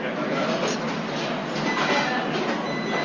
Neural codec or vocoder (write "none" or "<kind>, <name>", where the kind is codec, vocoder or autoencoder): none